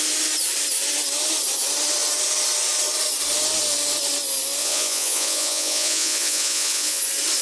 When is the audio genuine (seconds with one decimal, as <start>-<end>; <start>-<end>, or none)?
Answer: 0.0-4.6; 7.0-7.4

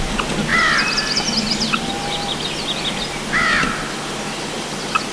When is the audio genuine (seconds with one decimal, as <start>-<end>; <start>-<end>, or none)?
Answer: 0.0-5.1

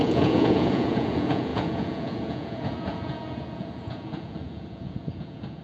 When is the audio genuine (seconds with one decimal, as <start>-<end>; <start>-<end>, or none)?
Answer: none

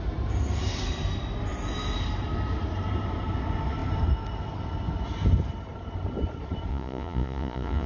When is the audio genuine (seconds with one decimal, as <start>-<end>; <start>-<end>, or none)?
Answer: 0.0-6.7

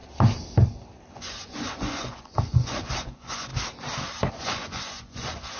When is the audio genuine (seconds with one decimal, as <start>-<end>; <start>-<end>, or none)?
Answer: 0.0-1.1; 3.5-4.3